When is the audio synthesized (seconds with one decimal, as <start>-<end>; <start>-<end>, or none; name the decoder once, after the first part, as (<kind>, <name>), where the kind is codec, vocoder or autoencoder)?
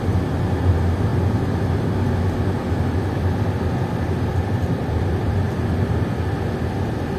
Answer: 1.1-1.6 (vocoder, BigVGAN v2); 4.3-5.5